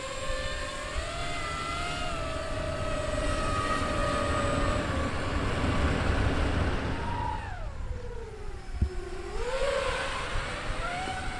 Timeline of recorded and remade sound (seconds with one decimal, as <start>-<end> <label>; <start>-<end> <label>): 0.0-1.2 remade; 1.2-2.0 recorded; 2.0-4.0 remade; 4.0-8.2 recorded; 8.2-11.4 remade